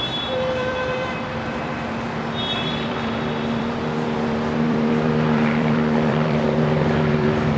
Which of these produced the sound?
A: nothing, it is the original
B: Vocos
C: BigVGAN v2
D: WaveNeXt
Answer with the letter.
C